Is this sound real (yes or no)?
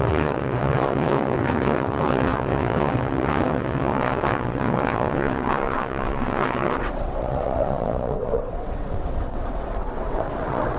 no